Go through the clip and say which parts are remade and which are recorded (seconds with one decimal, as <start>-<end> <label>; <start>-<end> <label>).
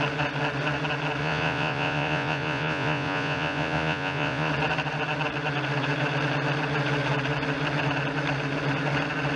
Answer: 0.0-1.2 recorded; 1.2-4.5 remade; 4.5-9.4 recorded